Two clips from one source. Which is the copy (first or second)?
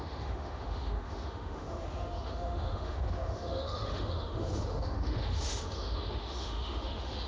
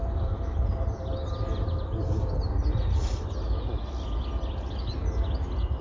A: first